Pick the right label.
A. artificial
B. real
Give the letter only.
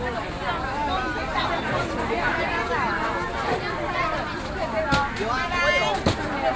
B